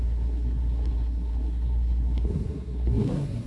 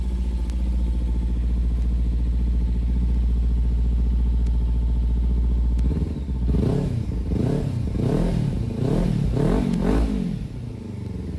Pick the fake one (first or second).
first